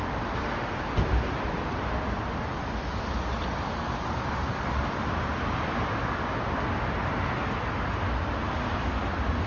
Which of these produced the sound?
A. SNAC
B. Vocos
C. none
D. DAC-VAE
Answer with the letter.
C